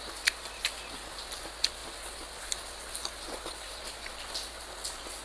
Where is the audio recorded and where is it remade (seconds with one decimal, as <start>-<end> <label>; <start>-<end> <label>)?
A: 0.0-5.2 recorded